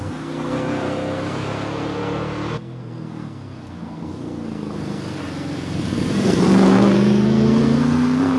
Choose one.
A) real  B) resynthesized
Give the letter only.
B